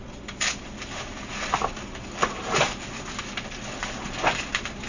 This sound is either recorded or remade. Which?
recorded